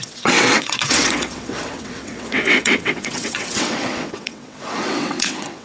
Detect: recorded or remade remade